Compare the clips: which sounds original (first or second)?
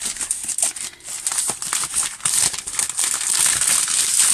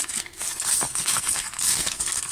first